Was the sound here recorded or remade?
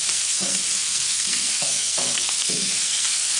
remade